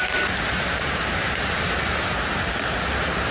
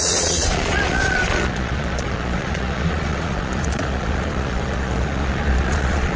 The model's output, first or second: second